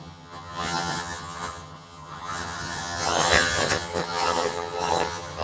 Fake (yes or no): yes